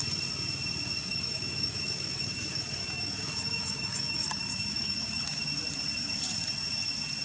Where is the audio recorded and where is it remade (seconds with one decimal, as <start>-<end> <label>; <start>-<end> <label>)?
0.0-1.1 recorded; 1.1-5.4 remade; 5.4-7.2 recorded